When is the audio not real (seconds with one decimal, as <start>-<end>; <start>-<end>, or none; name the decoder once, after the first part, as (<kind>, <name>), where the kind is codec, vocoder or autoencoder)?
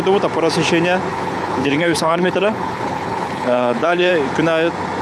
1.1-4.1 (codec, HILCodec)